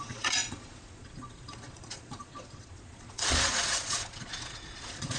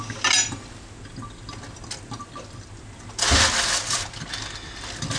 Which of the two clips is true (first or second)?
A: second